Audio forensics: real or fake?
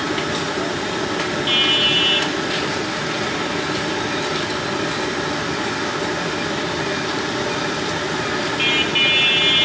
real